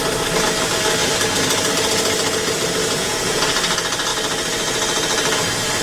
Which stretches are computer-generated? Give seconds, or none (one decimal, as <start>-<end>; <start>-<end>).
2.8-3.4